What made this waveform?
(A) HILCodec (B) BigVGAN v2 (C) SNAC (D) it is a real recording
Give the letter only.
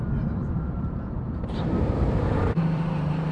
B